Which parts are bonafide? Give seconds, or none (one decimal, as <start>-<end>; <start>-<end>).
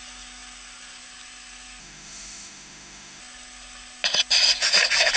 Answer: 0.0-1.8; 3.2-5.2